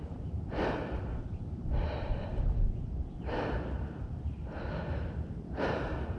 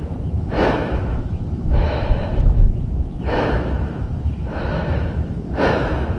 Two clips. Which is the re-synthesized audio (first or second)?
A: second